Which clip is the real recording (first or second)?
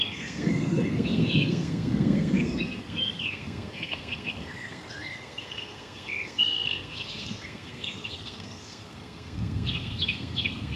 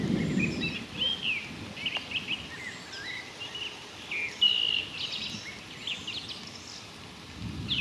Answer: second